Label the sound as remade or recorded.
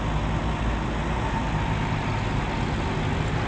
recorded